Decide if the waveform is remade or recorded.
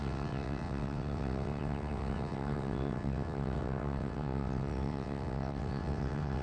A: remade